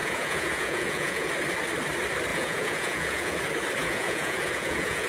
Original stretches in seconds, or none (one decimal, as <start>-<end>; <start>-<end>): 1.3-2.3; 3.4-3.8